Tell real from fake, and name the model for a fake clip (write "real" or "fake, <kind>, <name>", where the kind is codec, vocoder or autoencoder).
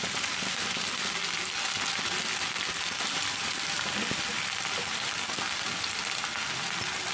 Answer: fake, vocoder, BigVGAN v2